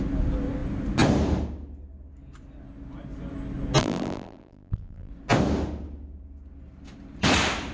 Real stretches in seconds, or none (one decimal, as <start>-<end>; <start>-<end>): 0.0-3.8; 5.1-7.7